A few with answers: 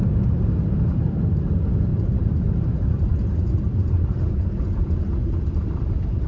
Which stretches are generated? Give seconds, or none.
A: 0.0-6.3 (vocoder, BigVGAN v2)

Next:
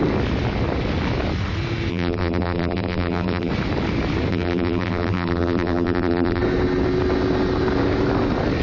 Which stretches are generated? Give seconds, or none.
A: 1.9-3.5 (vocoder, BigVGAN v2); 4.3-6.4